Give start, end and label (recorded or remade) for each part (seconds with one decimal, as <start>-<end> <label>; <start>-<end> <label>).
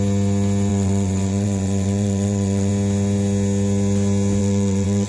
0.0-0.7 recorded; 0.7-2.7 remade; 2.7-4.4 recorded; 4.4-5.1 remade